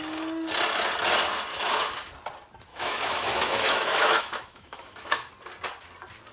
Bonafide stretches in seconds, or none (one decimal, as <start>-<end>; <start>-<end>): 0.0-1.5; 2.1-2.7; 5.3-6.3